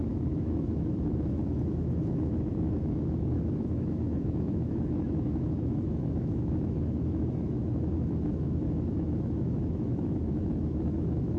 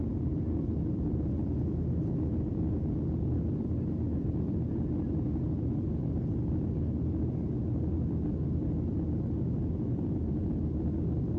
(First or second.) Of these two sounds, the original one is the second